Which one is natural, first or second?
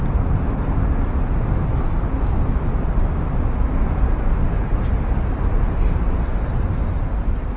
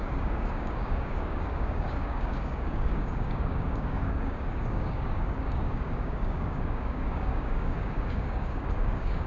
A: first